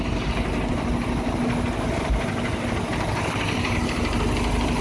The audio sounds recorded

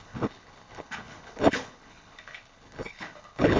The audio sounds remade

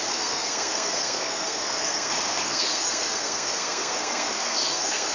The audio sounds remade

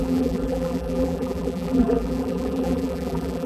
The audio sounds remade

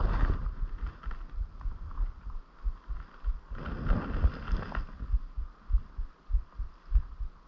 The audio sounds recorded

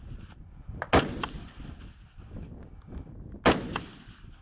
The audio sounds recorded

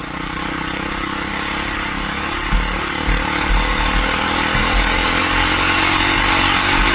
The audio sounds remade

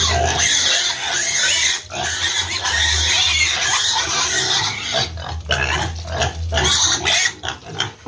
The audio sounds recorded